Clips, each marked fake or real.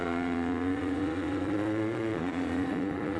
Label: fake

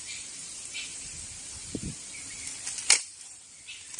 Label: fake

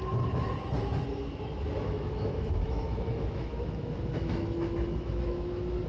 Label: fake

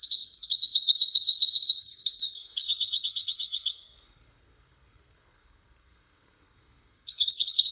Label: fake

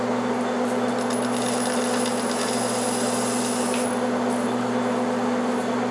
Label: real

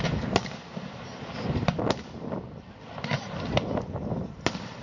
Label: real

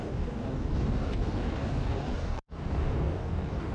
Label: fake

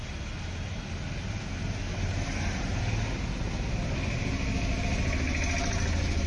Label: real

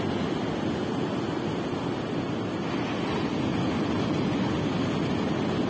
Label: real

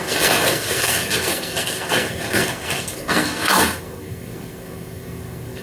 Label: fake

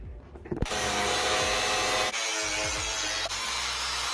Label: real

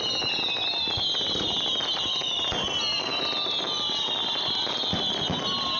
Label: real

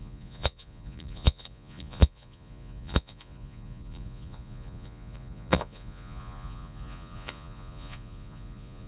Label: fake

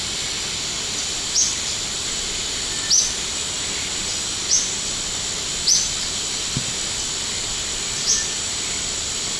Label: real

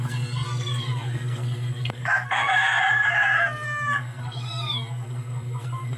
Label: fake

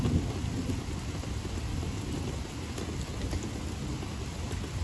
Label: real